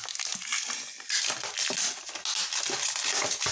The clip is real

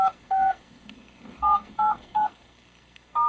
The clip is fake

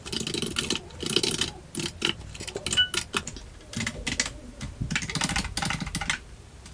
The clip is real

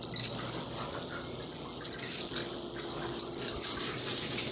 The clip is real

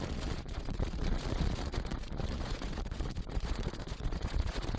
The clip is fake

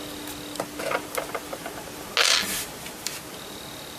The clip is real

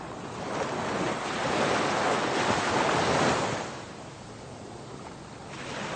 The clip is real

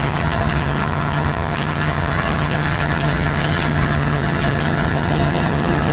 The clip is fake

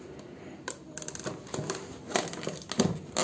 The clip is real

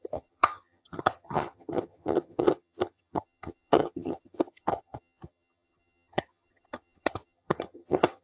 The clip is fake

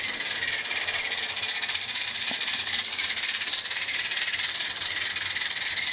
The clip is fake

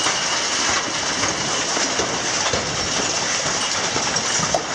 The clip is real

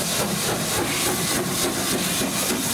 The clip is real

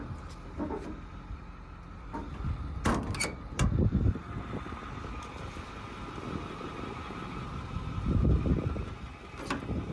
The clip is real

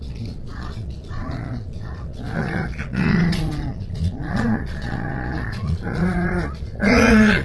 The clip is fake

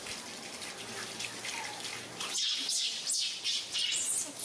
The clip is real